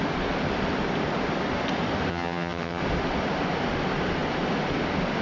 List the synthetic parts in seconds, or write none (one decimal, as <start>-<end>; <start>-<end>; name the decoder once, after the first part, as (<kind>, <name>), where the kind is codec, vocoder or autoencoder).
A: 2.1-2.8 (vocoder, HiFi-GAN)